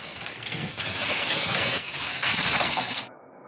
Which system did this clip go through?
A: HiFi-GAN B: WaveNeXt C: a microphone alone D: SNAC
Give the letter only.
D